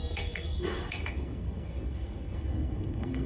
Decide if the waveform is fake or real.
fake